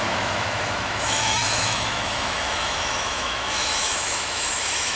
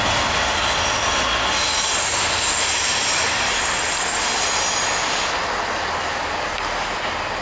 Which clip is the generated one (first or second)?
first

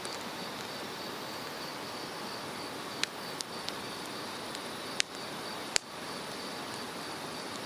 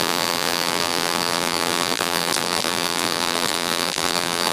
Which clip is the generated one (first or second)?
second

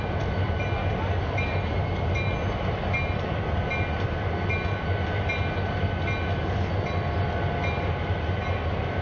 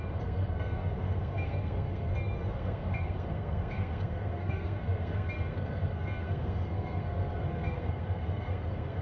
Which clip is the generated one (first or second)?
second